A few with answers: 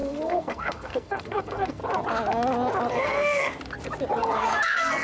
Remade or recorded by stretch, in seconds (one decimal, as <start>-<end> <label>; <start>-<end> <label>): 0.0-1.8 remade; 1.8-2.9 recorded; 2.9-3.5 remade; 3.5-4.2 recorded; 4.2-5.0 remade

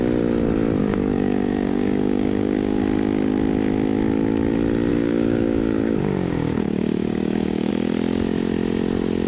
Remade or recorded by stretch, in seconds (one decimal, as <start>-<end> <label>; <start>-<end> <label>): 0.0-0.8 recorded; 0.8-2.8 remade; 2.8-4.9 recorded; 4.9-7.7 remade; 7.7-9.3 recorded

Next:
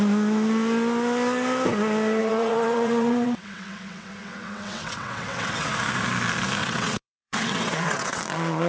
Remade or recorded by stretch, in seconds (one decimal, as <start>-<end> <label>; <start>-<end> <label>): 0.0-2.2 recorded; 2.2-5.7 remade; 5.7-6.6 recorded; 6.6-8.2 remade; 8.2-8.7 recorded

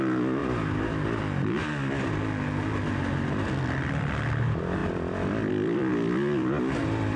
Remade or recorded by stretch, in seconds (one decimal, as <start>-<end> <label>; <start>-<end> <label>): 0.0-0.4 remade; 0.4-3.6 recorded; 3.6-7.2 remade

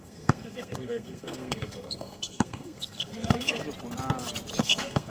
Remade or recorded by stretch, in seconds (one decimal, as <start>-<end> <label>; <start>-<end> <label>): 0.0-3.6 remade; 3.6-4.6 recorded; 4.6-5.1 remade

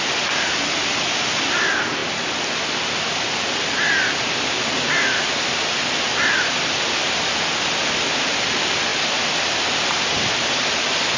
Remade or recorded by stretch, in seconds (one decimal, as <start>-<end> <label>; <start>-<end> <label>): 0.0-11.2 recorded

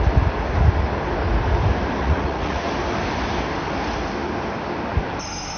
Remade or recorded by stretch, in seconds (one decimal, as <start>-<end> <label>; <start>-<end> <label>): 0.0-2.0 recorded; 2.0-2.7 remade; 2.7-5.6 recorded